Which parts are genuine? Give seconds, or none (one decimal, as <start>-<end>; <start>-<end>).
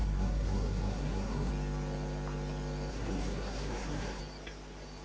1.5-2.9; 4.2-5.0